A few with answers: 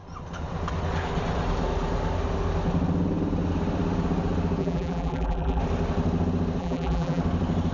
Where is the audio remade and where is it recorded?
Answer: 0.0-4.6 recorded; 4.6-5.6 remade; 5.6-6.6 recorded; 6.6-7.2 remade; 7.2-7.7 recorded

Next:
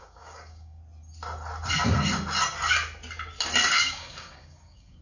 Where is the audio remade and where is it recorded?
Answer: 0.0-0.8 remade; 0.8-3.8 recorded; 3.8-5.0 remade

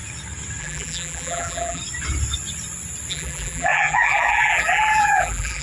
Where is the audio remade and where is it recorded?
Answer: 0.0-0.6 recorded; 0.6-1.8 remade; 1.8-3.1 recorded; 3.1-5.6 remade

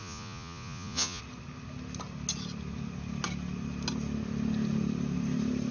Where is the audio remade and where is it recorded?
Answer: 0.0-1.2 remade; 1.2-5.7 recorded

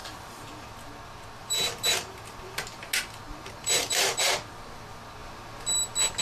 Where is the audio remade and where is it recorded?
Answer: 0.0-0.7 remade; 0.7-1.4 recorded; 1.4-2.8 remade; 2.8-3.3 recorded; 3.3-4.3 remade; 4.3-6.2 recorded

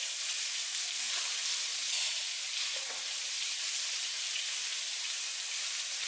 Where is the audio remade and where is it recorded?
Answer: 0.0-0.5 recorded; 0.5-1.1 remade; 1.1-6.1 recorded

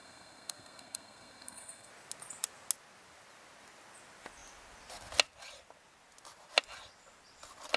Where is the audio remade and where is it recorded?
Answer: 0.0-1.9 remade; 1.9-7.8 recorded

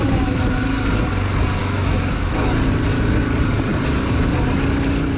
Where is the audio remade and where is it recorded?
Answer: 0.0-1.6 recorded; 1.6-2.5 remade; 2.5-5.2 recorded